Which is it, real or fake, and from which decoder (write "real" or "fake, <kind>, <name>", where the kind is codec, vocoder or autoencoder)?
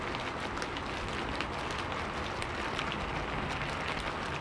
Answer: real